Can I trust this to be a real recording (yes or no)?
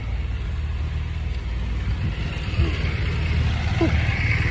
yes